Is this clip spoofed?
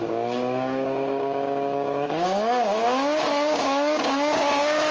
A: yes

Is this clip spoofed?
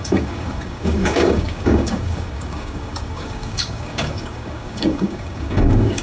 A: yes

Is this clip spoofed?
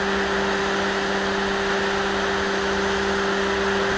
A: no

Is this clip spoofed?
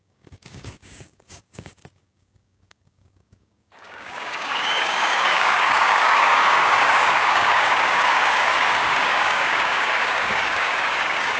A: yes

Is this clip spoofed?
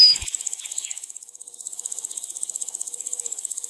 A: yes